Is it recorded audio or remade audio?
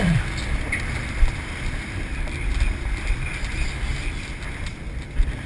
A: remade